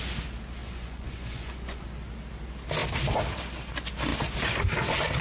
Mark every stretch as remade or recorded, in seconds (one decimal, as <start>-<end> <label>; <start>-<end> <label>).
0.0-0.6 recorded; 0.6-1.8 remade; 1.8-5.2 recorded